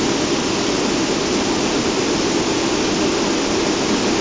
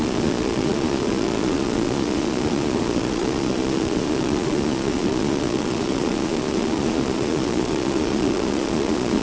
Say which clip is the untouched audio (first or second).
first